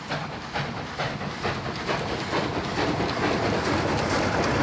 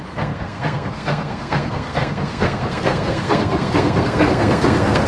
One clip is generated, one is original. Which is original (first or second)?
first